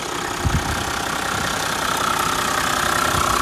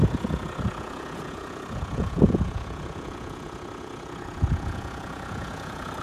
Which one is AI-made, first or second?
second